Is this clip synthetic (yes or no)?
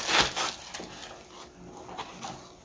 no